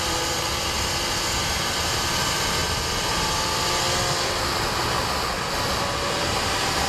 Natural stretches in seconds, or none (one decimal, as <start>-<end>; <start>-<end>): 2.6-6.1